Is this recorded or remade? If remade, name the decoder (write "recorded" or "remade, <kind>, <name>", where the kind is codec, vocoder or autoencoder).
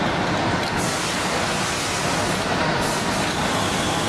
recorded